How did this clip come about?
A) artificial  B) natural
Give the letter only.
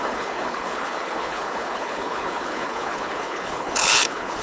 A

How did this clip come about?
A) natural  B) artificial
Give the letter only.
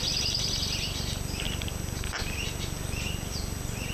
A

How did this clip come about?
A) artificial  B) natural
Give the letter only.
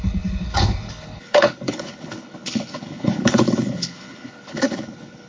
A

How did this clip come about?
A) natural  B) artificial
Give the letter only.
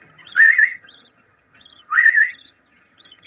B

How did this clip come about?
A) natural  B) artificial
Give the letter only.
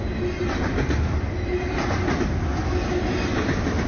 A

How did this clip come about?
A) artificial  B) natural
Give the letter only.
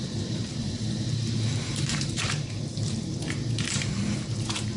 A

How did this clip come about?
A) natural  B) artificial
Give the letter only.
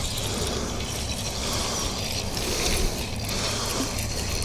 A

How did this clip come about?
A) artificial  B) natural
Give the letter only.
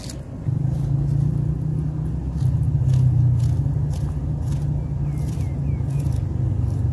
B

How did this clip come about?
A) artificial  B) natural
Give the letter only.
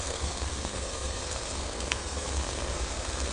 A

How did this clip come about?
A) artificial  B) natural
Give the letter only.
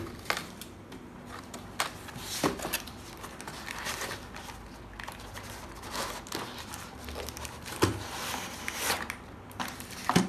B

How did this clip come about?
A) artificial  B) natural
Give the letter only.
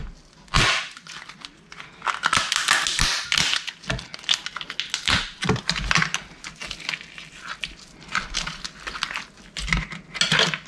B